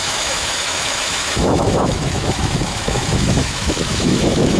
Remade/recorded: remade